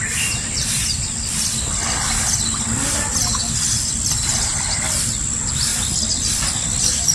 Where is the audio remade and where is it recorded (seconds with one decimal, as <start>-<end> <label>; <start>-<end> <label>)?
0.0-7.1 recorded